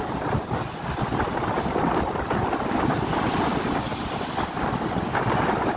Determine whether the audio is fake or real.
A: real